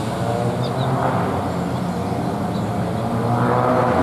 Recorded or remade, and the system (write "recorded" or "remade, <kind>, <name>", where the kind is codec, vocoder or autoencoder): recorded